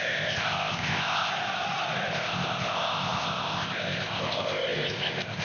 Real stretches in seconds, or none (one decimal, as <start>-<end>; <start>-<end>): 1.3-2.1